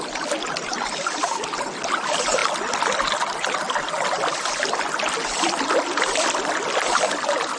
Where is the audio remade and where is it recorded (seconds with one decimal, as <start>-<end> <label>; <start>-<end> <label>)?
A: 0.0-7.6 recorded